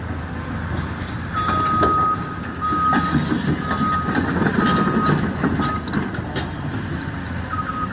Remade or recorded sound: recorded